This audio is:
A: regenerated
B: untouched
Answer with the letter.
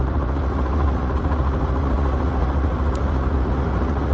A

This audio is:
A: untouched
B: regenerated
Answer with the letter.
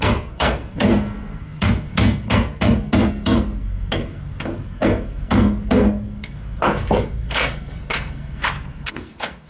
B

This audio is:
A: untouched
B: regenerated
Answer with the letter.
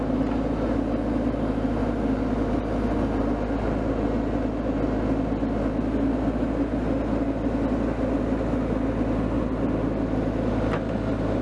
A